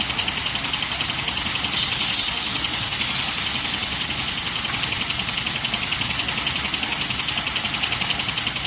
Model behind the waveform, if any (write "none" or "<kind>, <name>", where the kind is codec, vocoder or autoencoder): none